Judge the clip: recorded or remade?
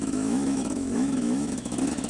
remade